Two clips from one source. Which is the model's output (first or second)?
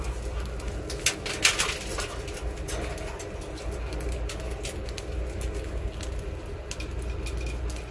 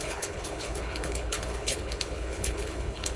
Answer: second